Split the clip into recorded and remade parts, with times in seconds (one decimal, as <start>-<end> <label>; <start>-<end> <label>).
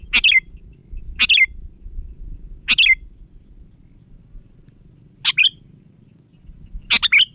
0.0-7.3 recorded